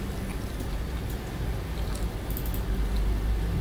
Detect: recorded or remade recorded